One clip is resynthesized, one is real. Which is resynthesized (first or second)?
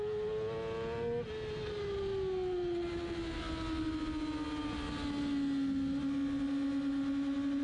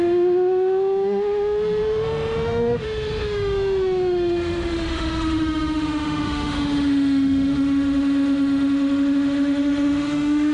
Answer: second